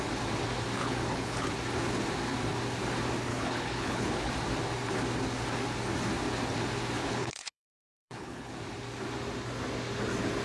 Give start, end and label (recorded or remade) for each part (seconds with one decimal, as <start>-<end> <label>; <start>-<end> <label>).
0.0-0.8 recorded; 0.8-1.5 remade; 1.5-3.3 recorded; 3.3-4.3 remade; 4.3-7.0 recorded; 7.0-8.5 remade; 8.5-10.4 recorded